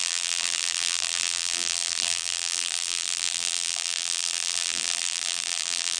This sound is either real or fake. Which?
fake